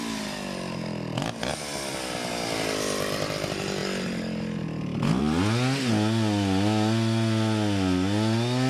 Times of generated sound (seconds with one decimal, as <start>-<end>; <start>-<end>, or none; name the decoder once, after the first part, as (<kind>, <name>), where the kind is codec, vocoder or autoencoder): none